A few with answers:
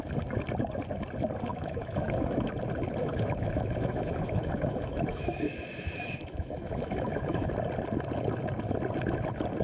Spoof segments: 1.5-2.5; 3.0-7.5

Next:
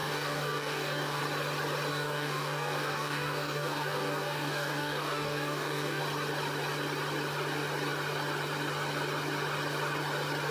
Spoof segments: 0.0-1.2; 1.9-6.0

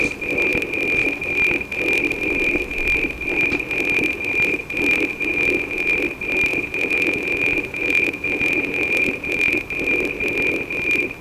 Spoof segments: 5.1-5.9; 6.5-9.6

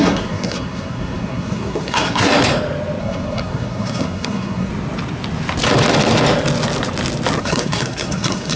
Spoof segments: 0.0-2.3; 3.0-4.7; 7.4-8.6